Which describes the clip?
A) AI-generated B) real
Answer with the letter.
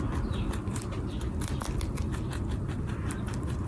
B